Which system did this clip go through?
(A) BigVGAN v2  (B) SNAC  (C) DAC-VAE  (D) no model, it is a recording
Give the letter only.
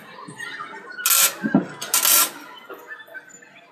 D